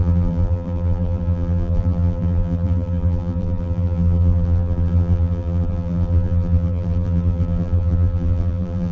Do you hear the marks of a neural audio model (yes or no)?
yes